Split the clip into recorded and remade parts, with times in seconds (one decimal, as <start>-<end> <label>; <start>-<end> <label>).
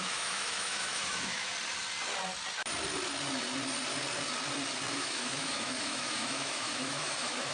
0.0-1.5 remade; 1.5-4.9 recorded; 4.9-7.5 remade